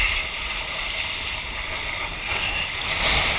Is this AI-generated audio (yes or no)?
no